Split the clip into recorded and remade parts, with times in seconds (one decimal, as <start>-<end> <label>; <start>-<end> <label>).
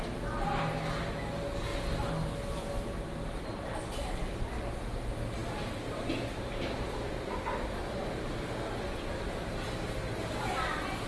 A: 0.0-11.1 recorded